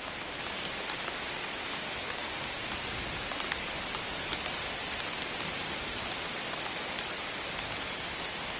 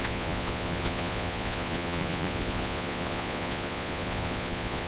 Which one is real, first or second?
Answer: first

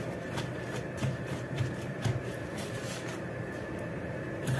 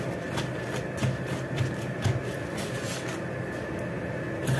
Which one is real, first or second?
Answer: second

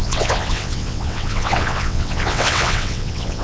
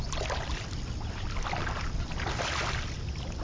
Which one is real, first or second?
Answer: second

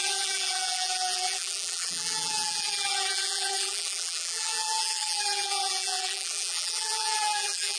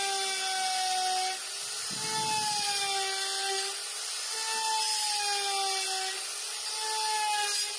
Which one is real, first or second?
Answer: second